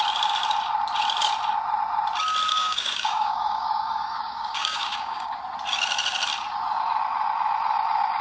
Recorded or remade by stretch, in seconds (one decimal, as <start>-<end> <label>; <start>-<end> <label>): 0.0-2.5 recorded; 2.5-5.4 remade; 5.4-8.2 recorded